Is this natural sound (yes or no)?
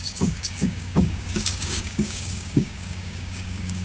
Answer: no